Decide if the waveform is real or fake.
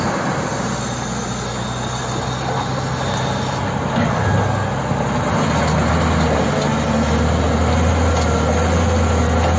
real